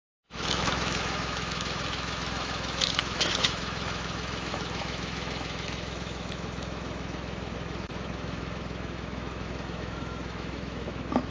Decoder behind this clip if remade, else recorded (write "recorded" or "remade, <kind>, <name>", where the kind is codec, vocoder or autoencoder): remade, autoencoder, DAC-VAE